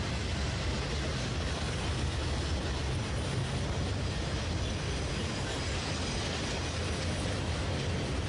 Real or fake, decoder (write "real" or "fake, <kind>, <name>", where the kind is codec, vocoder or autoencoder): real